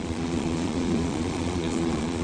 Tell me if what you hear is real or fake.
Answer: fake